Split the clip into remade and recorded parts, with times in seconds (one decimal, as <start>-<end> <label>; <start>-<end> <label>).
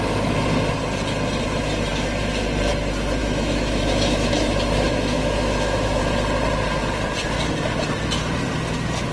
0.0-3.2 recorded; 3.2-6.0 remade; 6.0-9.1 recorded